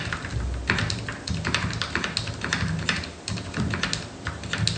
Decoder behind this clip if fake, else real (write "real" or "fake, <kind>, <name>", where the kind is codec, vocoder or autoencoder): real